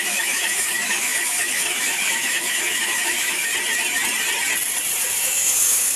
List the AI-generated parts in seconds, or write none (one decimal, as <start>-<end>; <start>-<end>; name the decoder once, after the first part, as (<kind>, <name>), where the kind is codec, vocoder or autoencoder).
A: 0.0-3.5 (autoencoder, DAC-VAE); 5.2-6.0